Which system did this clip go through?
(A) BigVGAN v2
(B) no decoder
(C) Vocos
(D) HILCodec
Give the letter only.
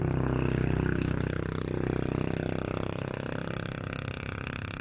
B